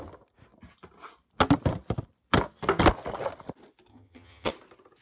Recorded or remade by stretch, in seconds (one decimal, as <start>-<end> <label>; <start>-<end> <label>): 0.0-3.9 recorded; 3.9-4.5 remade; 4.5-5.0 recorded